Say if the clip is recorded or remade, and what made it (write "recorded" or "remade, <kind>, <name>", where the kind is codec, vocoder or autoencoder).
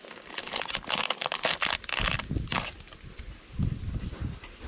recorded